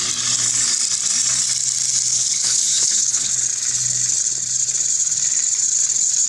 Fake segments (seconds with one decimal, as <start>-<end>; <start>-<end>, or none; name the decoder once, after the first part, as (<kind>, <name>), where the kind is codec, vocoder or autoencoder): 2.1-3.3 (codec, HILCodec)